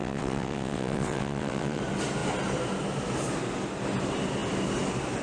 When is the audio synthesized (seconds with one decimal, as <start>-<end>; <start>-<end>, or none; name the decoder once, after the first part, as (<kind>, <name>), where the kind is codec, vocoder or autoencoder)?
0.0-1.8 (vocoder, WaveNeXt)